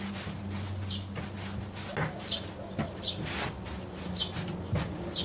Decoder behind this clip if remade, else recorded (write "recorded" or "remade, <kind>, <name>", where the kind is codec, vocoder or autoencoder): recorded